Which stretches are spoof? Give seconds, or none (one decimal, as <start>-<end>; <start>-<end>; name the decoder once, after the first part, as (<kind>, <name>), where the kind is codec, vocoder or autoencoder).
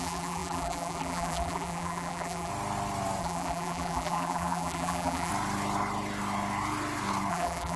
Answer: 0.0-2.5 (vocoder, BigVGAN v2); 3.2-5.3; 7.3-7.8